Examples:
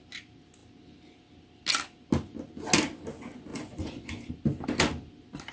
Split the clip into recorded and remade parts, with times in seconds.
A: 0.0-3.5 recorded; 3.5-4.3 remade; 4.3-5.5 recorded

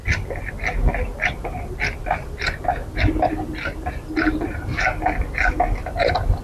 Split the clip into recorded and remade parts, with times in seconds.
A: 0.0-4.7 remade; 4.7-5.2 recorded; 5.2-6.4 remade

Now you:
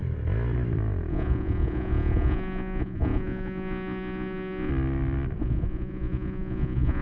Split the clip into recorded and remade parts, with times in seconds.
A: 0.0-1.1 recorded; 1.1-4.7 remade; 4.7-5.4 recorded; 5.4-7.0 remade